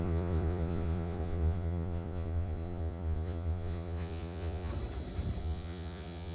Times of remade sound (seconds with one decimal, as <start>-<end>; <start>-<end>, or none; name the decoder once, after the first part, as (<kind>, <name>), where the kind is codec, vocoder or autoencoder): 0.0-4.7 (vocoder, Vocos); 5.4-6.3